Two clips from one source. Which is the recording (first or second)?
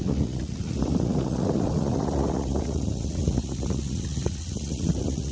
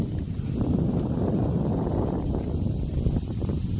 second